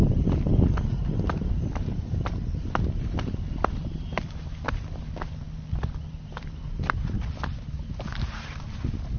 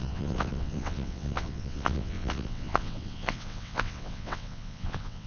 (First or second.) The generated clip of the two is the second